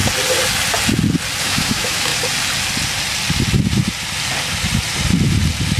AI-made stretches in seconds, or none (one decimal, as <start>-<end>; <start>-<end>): 1.4-2.1